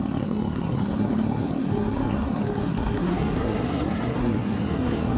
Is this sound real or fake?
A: fake